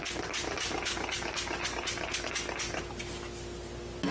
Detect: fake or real real